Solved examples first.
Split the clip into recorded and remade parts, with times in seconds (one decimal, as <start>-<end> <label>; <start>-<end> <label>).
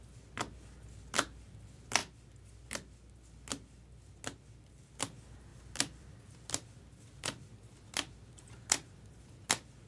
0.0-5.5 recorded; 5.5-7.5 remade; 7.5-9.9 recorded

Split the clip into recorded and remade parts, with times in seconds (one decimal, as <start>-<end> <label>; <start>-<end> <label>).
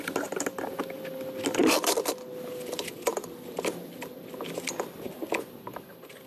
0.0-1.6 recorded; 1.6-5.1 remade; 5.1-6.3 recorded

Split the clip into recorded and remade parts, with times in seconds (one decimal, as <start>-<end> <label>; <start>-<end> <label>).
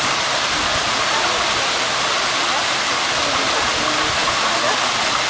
0.0-5.3 recorded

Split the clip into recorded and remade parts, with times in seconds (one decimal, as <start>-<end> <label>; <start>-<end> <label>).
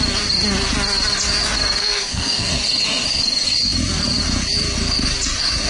0.0-1.8 recorded; 1.8-2.5 remade; 2.5-5.7 recorded